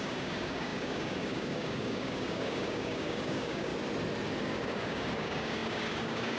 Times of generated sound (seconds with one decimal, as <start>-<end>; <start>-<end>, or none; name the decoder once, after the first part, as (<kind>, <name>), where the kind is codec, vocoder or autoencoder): 0.0-3.7 (codec, DAC); 4.4-6.4